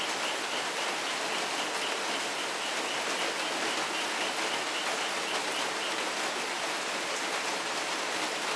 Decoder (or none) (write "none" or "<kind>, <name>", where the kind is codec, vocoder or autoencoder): none